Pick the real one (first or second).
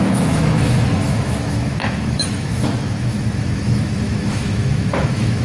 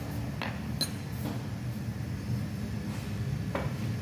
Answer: second